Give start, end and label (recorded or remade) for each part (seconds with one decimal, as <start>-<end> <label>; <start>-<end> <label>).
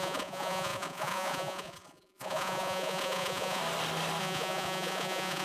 0.0-3.6 remade; 3.6-4.2 recorded; 4.2-5.4 remade